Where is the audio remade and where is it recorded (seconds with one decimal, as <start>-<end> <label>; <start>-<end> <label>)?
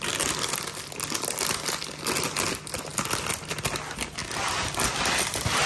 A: 0.0-5.7 recorded